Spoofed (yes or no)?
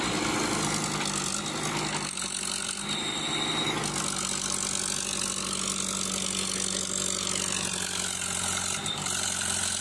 no